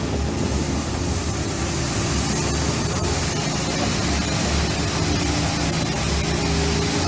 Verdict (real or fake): real